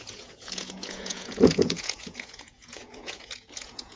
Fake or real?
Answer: fake